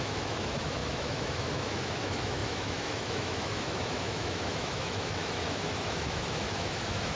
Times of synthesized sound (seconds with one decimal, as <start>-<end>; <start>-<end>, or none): 0.0-7.2